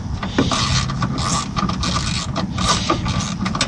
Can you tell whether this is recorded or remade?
recorded